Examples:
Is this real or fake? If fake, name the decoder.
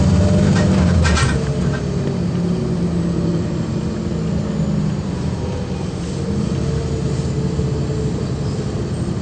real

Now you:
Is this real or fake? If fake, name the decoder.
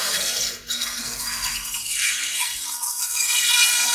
fake, codec, SNAC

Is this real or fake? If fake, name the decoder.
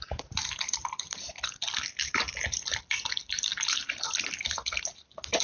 real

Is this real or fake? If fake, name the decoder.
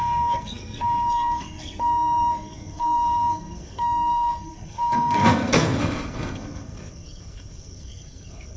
fake, codec, SNAC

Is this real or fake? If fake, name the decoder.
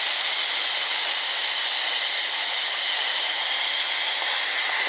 real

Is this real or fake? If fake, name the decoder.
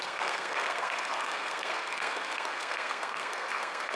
fake, codec, SNAC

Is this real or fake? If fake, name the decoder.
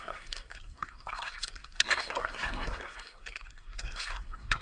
fake, codec, SNAC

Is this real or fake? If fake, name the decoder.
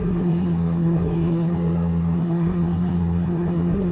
fake, codec, SNAC